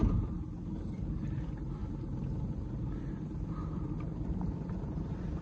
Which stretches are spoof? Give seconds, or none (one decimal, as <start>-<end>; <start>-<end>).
none